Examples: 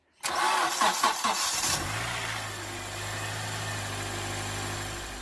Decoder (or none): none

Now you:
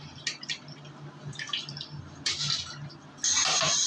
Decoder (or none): none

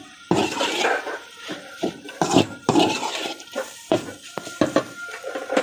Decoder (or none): vocoder, BigVGAN v2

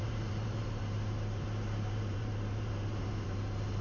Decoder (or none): vocoder, BigVGAN v2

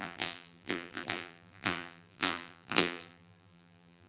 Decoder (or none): vocoder, BigVGAN v2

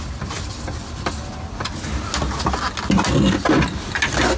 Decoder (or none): none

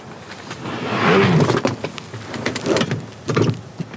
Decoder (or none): none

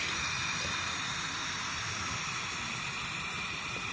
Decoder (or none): none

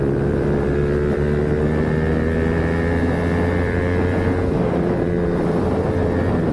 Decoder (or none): vocoder, BigVGAN v2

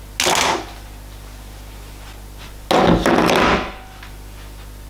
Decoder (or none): none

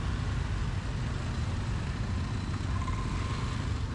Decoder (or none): none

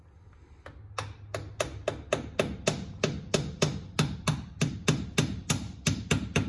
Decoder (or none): none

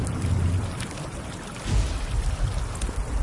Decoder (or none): none